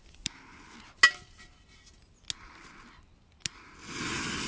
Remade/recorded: recorded